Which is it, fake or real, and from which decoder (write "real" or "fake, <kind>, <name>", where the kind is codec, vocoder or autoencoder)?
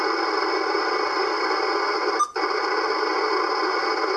real